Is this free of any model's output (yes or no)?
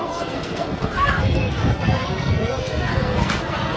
no